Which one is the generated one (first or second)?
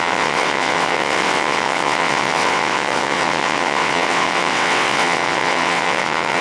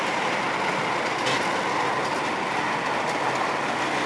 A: first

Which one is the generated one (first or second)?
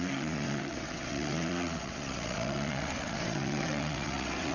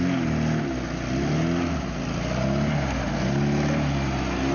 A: first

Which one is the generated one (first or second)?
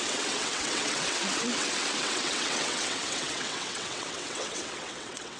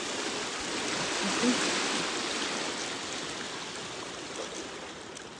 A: first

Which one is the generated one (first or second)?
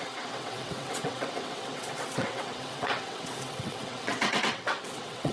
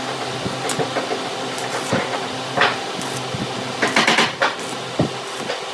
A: first